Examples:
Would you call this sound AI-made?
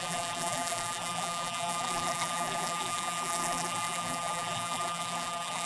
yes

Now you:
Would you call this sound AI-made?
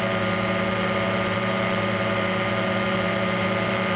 yes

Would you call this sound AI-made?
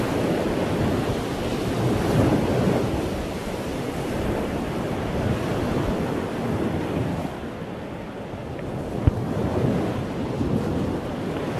no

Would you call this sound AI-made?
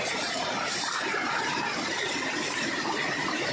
yes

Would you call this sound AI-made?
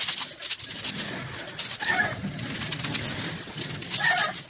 no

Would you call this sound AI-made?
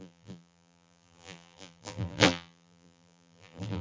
yes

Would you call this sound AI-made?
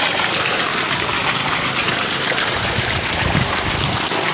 yes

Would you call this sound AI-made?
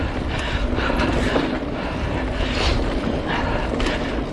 no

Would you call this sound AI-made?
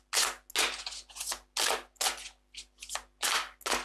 no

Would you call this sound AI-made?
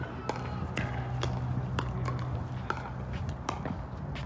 no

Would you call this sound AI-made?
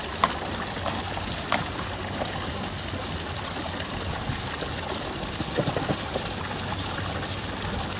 no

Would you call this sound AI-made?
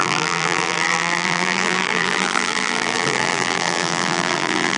yes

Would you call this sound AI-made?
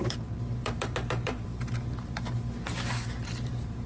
yes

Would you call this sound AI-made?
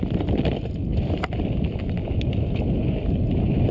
no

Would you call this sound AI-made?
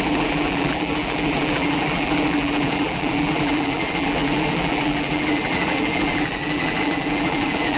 yes